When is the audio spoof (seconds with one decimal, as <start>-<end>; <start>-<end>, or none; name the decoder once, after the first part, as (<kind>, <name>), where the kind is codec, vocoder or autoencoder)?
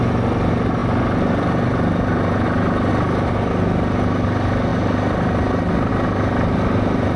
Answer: none